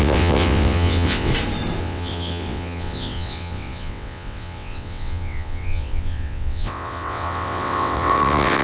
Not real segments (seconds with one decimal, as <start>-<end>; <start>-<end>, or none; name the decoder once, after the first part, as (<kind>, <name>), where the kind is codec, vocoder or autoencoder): 0.0-1.3 (vocoder, WaveNeXt); 1.8-8.6